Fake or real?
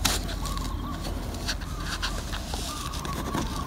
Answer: real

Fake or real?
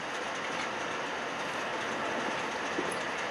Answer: real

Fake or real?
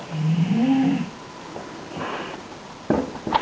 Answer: real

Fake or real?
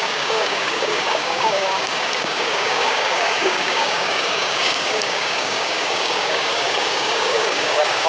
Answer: fake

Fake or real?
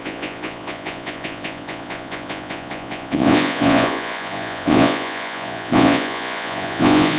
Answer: fake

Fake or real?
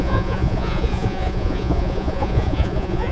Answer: fake